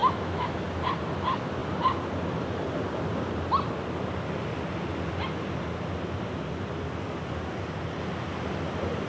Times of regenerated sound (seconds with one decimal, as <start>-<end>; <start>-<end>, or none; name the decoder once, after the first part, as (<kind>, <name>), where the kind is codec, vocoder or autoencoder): 0.0-0.6 (autoencoder, DAC-VAE)